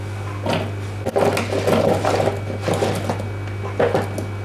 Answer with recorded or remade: recorded